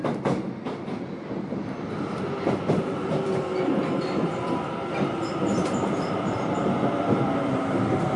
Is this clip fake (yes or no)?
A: yes